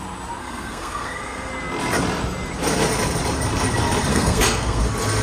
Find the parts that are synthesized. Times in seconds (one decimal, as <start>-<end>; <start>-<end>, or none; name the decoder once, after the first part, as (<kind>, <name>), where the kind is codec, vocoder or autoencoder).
0.4-1.5 (codec, SNAC); 4.1-4.8